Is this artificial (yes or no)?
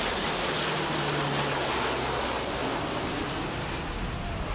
no